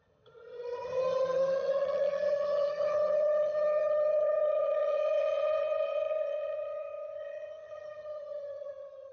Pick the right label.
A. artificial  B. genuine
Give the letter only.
A